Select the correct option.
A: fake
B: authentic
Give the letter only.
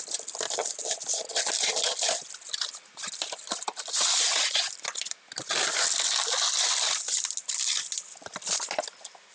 B